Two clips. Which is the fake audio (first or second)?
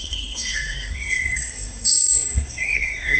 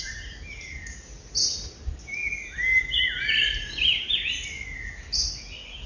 first